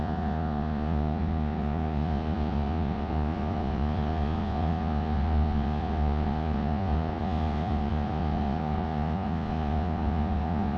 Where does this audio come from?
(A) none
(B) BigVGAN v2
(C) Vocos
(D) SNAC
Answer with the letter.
C